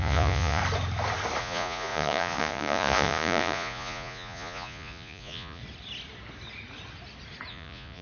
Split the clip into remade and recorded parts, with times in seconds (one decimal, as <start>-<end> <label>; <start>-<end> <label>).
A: 0.0-0.6 remade; 0.6-1.4 recorded; 1.4-5.6 remade; 5.6-7.5 recorded; 7.5-8.0 remade